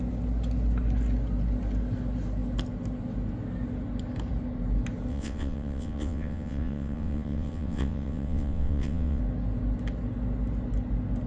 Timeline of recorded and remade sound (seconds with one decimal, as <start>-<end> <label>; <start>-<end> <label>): 0.0-5.1 recorded; 5.1-9.2 remade; 9.2-11.3 recorded